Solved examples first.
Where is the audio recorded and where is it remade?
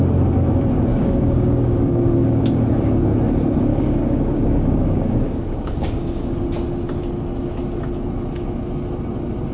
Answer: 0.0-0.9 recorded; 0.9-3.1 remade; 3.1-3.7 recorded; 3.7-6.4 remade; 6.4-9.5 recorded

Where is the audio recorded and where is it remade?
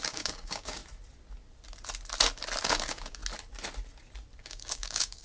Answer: 0.0-0.8 remade; 0.8-2.6 recorded; 2.6-3.2 remade; 3.2-4.4 recorded; 4.4-5.2 remade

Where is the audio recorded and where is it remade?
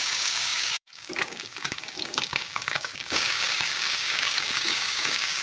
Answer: 0.0-5.4 remade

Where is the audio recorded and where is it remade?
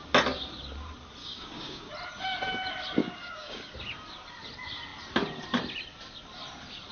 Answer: 0.0-1.2 recorded; 1.2-1.9 remade; 1.9-3.0 recorded; 3.0-3.8 remade; 3.8-6.9 recorded